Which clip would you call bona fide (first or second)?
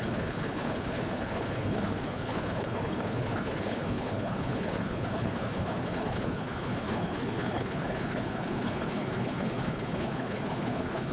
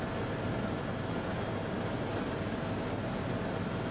second